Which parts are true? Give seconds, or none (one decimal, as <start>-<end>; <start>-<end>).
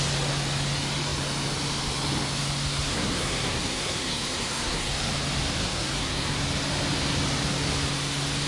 0.0-2.9; 4.9-5.6; 6.4-8.5